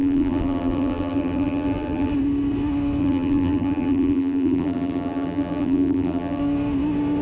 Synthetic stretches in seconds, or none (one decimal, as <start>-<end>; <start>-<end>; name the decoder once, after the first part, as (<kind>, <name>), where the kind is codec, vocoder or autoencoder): 0.0-2.1 (vocoder, BigVGAN v2); 3.0-6.4